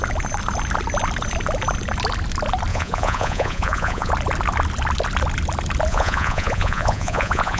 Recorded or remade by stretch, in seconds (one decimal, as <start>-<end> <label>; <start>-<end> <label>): 0.0-2.7 recorded; 2.7-4.1 remade; 4.1-5.9 recorded; 5.9-7.6 remade